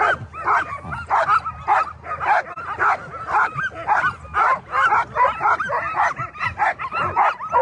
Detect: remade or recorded recorded